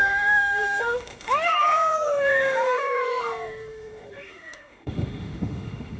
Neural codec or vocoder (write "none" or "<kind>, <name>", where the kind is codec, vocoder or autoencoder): autoencoder, DAC-VAE